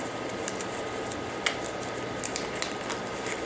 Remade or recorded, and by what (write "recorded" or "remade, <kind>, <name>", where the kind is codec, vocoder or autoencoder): recorded